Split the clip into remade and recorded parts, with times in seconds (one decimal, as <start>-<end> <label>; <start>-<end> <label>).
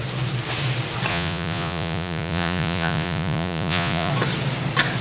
0.0-1.1 recorded; 1.1-4.1 remade; 4.1-5.0 recorded